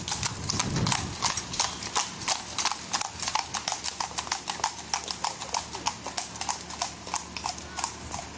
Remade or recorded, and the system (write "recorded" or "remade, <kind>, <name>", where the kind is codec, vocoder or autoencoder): recorded